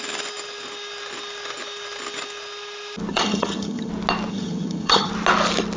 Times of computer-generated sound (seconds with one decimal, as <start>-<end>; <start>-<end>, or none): 3.1-3.9; 4.3-5.1

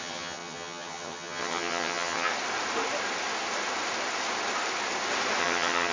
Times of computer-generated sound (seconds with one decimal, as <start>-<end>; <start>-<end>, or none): 0.0-2.3; 5.4-5.9

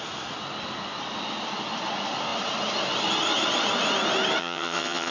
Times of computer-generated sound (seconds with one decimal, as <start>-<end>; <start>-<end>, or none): 4.4-5.1

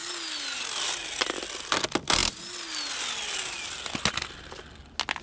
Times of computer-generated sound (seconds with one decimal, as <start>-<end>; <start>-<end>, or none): none

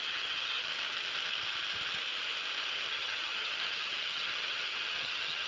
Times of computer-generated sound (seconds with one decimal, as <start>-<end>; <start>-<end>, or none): 0.0-0.7; 2.7-5.5

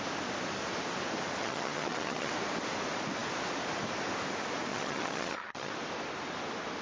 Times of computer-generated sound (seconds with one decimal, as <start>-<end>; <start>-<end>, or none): 1.4-2.3; 4.7-5.7

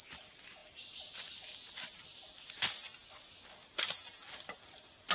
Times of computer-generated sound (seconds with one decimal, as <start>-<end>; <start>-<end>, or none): none

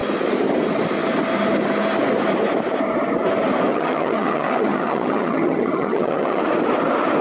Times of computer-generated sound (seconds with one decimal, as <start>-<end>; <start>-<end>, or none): 3.7-6.4